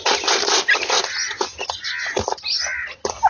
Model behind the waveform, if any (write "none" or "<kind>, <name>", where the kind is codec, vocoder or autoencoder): none